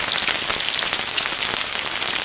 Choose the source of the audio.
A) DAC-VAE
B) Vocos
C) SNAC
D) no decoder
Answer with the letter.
D